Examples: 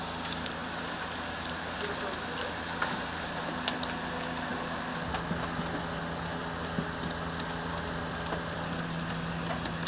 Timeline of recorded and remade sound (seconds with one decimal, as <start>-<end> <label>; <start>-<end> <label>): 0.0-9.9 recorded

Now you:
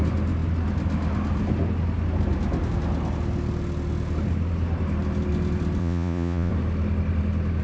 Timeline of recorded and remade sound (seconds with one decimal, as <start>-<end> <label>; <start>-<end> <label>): 0.0-5.8 recorded; 5.8-6.5 remade; 6.5-7.6 recorded

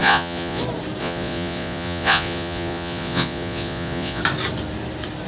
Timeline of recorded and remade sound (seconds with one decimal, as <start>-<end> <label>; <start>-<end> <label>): 0.0-0.6 remade; 0.6-1.0 recorded; 1.0-4.2 remade; 4.2-5.3 recorded

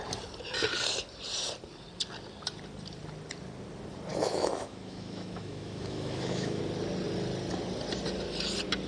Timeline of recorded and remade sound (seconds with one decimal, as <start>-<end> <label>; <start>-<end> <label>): 0.0-4.1 recorded; 4.1-6.6 remade; 6.6-8.9 recorded

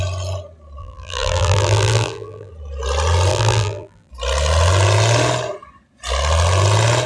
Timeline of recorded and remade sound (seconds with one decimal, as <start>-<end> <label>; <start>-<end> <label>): 0.0-0.8 recorded; 0.8-2.5 remade; 2.5-3.3 recorded; 3.3-4.1 remade; 4.1-7.1 recorded

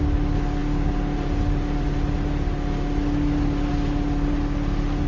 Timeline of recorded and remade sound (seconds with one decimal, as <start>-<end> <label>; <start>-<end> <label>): 0.0-5.1 recorded

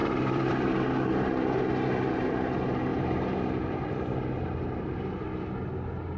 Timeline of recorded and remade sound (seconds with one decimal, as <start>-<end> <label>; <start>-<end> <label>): 0.0-0.7 remade; 0.7-2.9 recorded; 2.9-4.8 remade; 4.8-6.2 recorded